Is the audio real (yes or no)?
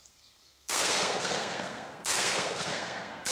no